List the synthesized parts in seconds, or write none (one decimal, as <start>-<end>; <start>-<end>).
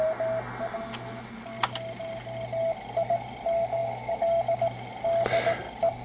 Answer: none